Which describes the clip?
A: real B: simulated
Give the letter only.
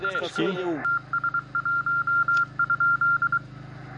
A